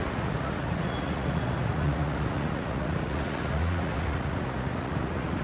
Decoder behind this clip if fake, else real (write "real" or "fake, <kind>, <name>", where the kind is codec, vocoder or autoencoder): fake, vocoder, Vocos